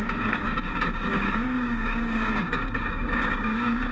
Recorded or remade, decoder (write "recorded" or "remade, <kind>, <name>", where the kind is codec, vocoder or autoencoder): remade, codec, DAC